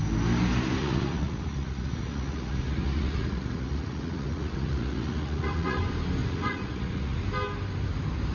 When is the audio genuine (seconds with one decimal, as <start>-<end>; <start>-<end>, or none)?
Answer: 0.0-0.8; 5.8-6.2; 7.2-8.3

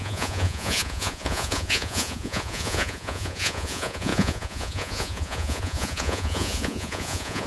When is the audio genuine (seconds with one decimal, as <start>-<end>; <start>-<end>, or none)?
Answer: none

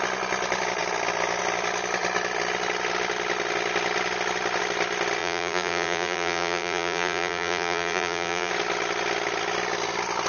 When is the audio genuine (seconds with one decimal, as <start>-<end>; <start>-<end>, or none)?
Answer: 0.0-5.2; 8.5-10.3

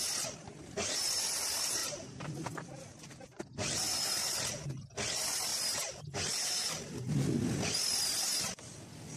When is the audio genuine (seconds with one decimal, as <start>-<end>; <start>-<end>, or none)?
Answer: 0.0-1.8; 3.4-9.2

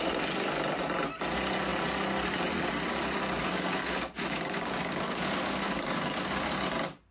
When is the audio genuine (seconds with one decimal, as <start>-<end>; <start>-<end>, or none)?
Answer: 0.0-3.8; 6.5-7.1

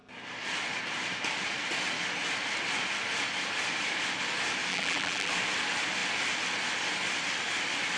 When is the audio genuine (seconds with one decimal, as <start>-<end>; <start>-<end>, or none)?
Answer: 0.0-4.7; 5.3-8.0